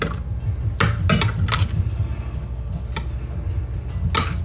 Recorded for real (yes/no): yes